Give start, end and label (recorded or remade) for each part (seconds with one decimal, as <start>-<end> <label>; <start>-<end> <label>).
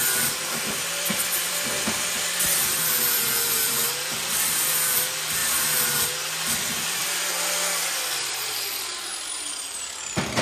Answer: 0.0-5.4 remade; 5.4-6.5 recorded; 6.5-7.0 remade; 7.0-7.7 recorded; 7.7-8.9 remade; 8.9-9.5 recorded; 9.5-10.4 remade